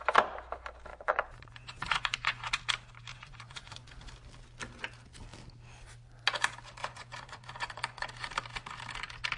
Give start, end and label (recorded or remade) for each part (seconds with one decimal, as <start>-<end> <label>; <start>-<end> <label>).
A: 0.0-0.9 recorded; 0.9-2.5 remade; 2.5-3.1 recorded; 3.1-3.9 remade; 3.9-6.8 recorded; 6.8-8.3 remade; 8.3-9.4 recorded

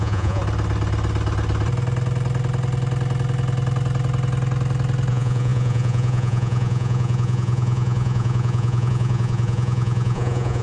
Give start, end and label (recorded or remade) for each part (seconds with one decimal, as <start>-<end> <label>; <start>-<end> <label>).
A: 0.0-0.4 remade; 0.4-5.1 recorded; 5.1-10.6 remade

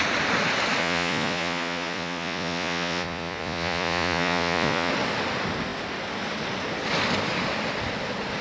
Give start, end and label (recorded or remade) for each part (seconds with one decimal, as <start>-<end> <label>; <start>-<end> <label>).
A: 0.0-0.8 recorded; 0.8-4.9 remade; 4.9-8.4 recorded

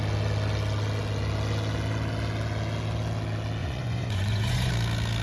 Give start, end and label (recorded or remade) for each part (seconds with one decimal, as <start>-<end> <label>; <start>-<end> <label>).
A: 0.0-3.6 recorded; 3.6-4.7 remade; 4.7-5.2 recorded